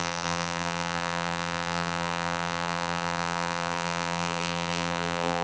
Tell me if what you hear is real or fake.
fake